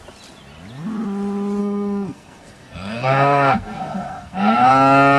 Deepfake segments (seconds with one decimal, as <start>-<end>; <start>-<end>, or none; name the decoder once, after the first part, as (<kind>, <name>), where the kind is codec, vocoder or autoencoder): 1.6-4.7 (codec, SNAC)